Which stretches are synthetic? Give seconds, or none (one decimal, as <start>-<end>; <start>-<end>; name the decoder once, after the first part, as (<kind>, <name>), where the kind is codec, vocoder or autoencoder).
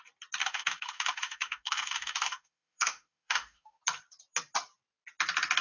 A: 0.4-3.8 (autoencoder, DAC-VAE)